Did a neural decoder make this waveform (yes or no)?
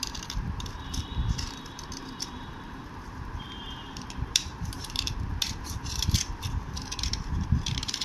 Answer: yes